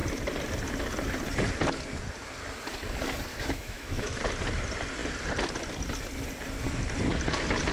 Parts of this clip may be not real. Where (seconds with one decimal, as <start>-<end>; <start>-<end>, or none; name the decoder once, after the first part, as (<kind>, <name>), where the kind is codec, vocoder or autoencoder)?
3.3-4.2 (autoencoder, DAC-VAE)